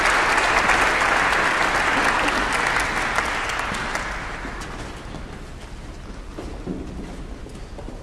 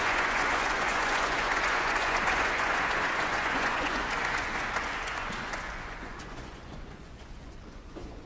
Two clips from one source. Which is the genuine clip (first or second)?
first